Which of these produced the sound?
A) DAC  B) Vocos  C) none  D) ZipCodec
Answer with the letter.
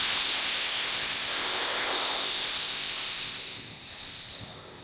D